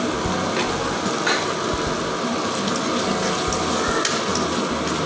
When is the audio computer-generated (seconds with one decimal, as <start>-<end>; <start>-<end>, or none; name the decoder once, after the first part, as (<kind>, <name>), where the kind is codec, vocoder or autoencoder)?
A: none